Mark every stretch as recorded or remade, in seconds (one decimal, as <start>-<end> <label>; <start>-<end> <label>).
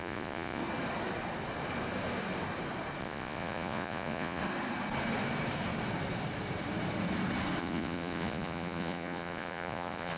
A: 0.0-0.6 remade; 0.6-3.0 recorded; 3.0-4.4 remade; 4.4-7.6 recorded; 7.6-10.2 remade